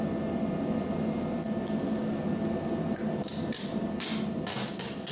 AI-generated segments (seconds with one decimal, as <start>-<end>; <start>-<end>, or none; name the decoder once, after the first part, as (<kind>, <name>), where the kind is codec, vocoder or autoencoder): 3.2-3.9 (vocoder, BigVGAN v2)